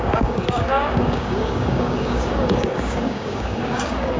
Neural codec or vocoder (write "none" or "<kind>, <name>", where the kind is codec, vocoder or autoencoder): codec, DAC